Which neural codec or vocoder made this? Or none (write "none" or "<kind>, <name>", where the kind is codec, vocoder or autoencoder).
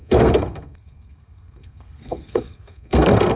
codec, SNAC